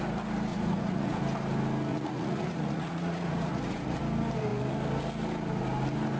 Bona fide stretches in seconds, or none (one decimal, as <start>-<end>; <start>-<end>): 0.0-0.5; 1.2-1.9; 4.0-6.2